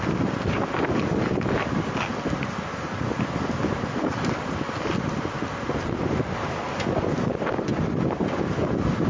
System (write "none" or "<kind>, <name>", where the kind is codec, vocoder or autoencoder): none